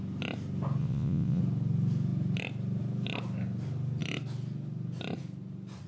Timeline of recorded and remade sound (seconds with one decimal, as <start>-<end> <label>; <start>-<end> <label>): 0.0-0.8 recorded; 0.8-1.4 remade; 1.4-5.9 recorded